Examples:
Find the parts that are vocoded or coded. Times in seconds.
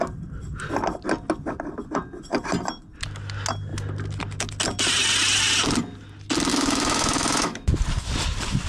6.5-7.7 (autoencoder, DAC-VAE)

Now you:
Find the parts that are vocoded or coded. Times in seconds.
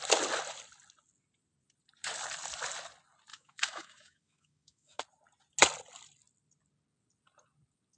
3.3-5.0 (autoencoder, DAC-VAE)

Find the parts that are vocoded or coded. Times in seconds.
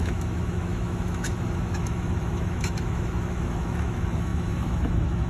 0.0-5.3 (autoencoder, DAC-VAE)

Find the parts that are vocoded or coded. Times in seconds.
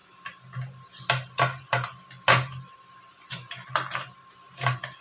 none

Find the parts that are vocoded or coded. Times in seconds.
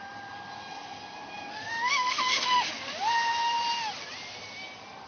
1.5-2.7 (autoencoder, DAC-VAE)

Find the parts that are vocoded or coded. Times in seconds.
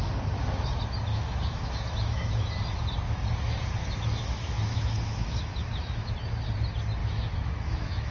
1.1-2.5 (autoencoder, DAC-VAE); 3.8-6.1; 7.0-8.1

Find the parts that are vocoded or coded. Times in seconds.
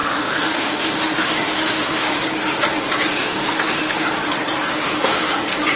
0.0-2.1 (autoencoder, DAC-VAE); 3.2-4.1; 4.7-5.3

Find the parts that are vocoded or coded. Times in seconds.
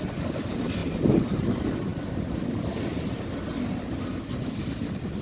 none